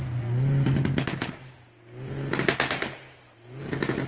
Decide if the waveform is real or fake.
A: real